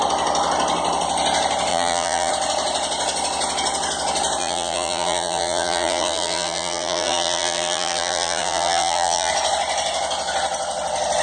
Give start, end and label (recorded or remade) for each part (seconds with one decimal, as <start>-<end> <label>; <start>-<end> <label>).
0.0-1.7 recorded; 1.7-2.3 remade; 2.3-4.4 recorded; 4.4-9.3 remade; 9.3-11.2 recorded